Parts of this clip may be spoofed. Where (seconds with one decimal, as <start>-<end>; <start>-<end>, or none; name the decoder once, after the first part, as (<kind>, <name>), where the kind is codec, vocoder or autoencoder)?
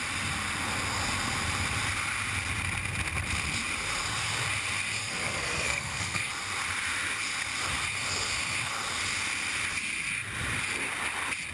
5.0-6.3 (codec, SNAC)